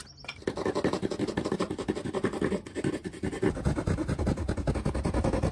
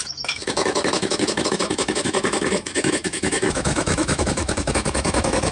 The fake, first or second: second